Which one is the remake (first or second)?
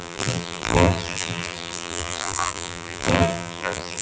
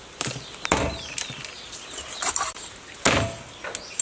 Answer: first